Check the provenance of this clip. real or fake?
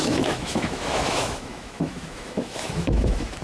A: fake